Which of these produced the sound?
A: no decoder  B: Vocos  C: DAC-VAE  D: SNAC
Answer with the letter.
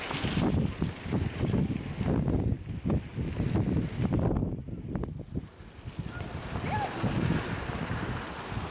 A